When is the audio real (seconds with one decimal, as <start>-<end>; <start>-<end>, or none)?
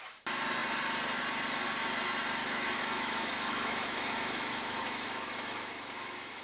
0.0-2.4